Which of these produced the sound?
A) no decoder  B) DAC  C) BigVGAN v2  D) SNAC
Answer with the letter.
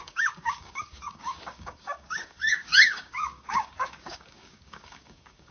B